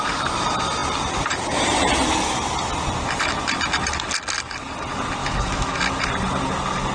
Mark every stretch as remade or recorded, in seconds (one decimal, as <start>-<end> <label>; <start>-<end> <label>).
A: 0.0-5.2 recorded; 5.2-5.8 remade; 5.8-6.9 recorded